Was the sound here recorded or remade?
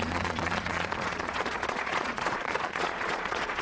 remade